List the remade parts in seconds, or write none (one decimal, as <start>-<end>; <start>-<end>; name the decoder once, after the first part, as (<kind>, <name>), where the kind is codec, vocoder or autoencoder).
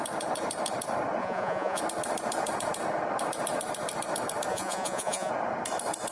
1.2-1.8 (vocoder, Vocos); 4.5-5.3